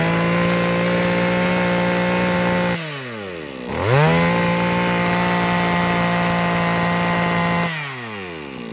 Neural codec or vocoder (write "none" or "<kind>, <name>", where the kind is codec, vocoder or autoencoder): none